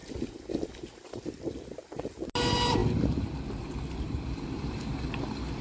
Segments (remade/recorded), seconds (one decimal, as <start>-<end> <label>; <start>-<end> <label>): 0.0-5.6 recorded